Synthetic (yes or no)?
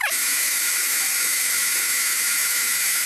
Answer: yes